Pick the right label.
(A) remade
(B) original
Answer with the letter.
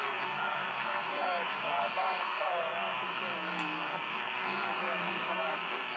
A